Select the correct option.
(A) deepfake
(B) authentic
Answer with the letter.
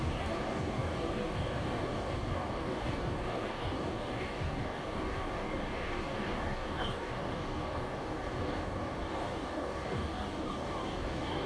A